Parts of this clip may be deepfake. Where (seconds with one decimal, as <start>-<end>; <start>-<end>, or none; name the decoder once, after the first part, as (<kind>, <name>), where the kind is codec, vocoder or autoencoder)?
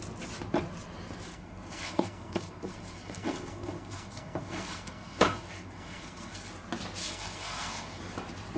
1.3-6.5 (codec, SNAC); 7.0-8.0